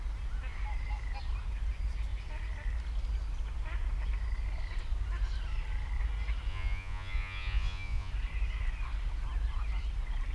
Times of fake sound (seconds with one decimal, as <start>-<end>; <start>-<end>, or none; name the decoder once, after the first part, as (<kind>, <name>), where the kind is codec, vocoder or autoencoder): 6.5-8.1 (vocoder, Vocos)